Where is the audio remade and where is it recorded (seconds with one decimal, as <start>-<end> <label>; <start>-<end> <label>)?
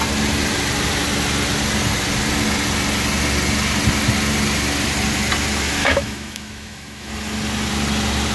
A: 0.0-5.8 recorded; 5.8-7.1 remade; 7.1-8.3 recorded